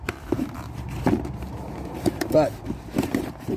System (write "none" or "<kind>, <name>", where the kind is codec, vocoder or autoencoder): vocoder, BigVGAN v2